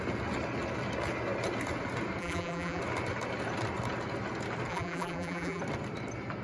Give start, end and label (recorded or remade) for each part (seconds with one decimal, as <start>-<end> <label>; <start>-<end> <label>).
0.0-2.2 recorded; 2.2-2.8 remade; 2.8-4.7 recorded; 4.7-5.6 remade; 5.6-6.4 recorded